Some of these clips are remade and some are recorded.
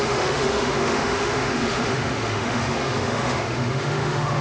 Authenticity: remade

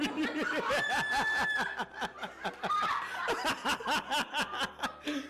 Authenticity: recorded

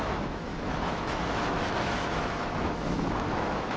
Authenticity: remade